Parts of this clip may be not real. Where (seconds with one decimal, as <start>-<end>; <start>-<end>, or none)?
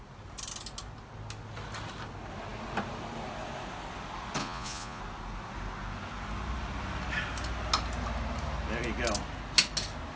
4.4-5.0